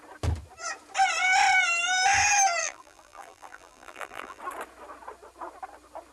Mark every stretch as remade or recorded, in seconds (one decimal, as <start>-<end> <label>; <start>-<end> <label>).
0.0-2.6 recorded; 2.6-4.4 remade; 4.4-6.1 recorded